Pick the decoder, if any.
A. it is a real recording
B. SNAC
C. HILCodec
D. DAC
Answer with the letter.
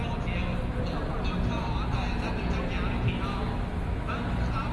A